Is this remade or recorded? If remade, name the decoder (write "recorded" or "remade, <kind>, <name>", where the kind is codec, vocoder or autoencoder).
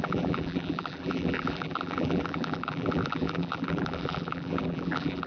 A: remade, vocoder, BigVGAN v2